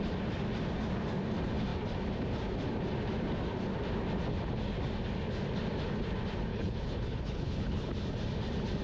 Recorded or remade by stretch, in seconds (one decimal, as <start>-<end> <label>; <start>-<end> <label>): 0.0-6.5 recorded; 6.5-7.9 remade; 7.9-8.8 recorded